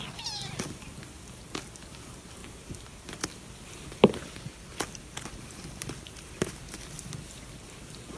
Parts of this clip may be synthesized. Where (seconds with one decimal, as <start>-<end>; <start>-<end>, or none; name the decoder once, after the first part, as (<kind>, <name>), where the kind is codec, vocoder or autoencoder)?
none